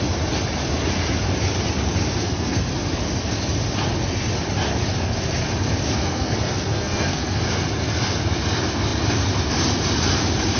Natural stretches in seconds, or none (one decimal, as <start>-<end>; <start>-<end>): 0.0-2.2; 2.7-6.0; 7.4-10.6